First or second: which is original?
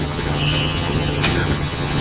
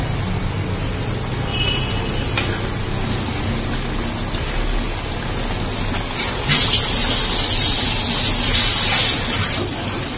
second